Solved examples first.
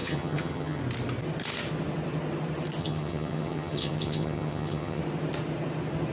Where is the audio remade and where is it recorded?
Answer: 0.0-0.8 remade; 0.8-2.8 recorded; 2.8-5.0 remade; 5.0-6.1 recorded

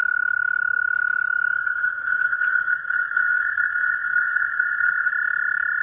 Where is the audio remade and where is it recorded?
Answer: 0.0-1.6 recorded; 1.6-5.1 remade; 5.1-5.8 recorded